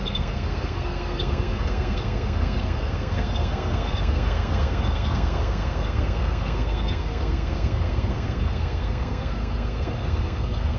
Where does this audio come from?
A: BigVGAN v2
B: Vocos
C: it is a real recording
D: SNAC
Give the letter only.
D